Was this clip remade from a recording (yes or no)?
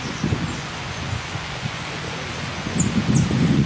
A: yes